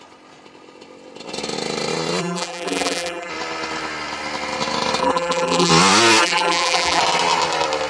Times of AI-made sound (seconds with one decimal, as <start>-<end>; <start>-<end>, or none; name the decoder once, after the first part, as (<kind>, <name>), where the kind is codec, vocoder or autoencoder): 2.2-3.3 (vocoder, BigVGAN v2); 5.0-5.7; 6.2-7.0